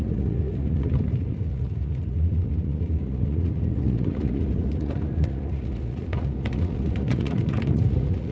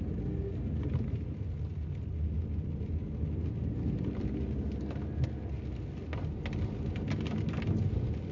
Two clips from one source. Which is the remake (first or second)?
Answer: first